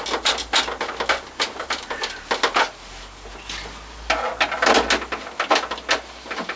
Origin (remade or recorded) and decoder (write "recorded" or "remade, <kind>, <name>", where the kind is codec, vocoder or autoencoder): recorded